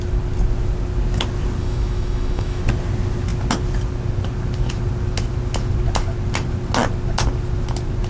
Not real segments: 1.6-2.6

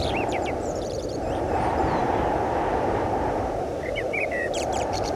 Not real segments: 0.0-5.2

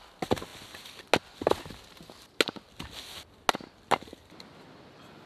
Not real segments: none